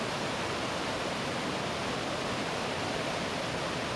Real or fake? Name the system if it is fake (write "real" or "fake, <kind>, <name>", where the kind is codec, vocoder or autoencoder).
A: real